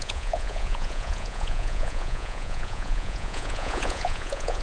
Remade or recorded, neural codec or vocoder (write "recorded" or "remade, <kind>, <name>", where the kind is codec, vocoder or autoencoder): remade, vocoder, Vocos